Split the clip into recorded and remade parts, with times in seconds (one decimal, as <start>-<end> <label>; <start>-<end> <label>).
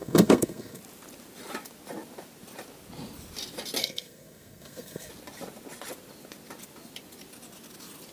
0.0-0.8 remade; 0.8-3.8 recorded; 3.8-5.1 remade; 5.1-8.1 recorded